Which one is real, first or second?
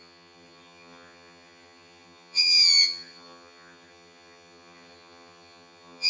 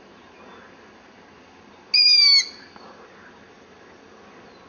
second